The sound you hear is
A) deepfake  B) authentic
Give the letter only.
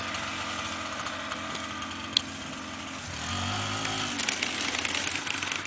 B